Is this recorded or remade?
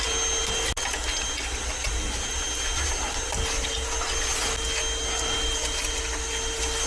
recorded